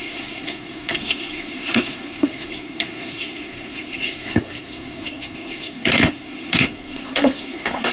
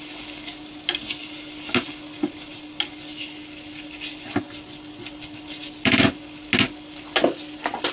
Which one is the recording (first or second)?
second